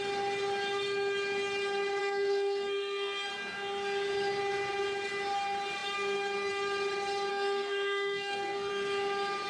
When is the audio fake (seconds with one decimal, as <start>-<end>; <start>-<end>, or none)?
2.0-3.3; 7.3-8.7